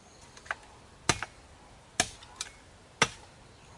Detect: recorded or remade recorded